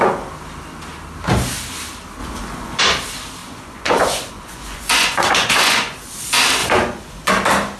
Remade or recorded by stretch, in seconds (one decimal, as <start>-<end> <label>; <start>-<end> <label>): 0.0-2.2 recorded; 2.2-2.8 remade; 2.8-3.4 recorded; 3.4-6.1 remade; 6.1-6.6 recorded; 6.6-7.3 remade; 7.3-7.8 recorded